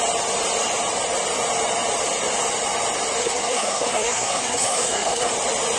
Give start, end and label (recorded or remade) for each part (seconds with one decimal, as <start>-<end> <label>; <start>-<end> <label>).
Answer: 0.0-3.2 recorded; 3.2-5.3 remade; 5.3-5.8 recorded